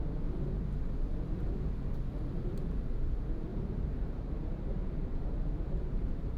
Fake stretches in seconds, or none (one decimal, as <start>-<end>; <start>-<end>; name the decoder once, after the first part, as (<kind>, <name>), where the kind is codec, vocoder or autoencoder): 3.5-6.4 (vocoder, BigVGAN v2)